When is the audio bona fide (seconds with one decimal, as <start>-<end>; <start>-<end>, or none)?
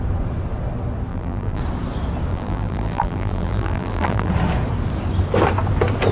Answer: 0.0-1.1; 1.6-2.3; 4.3-6.1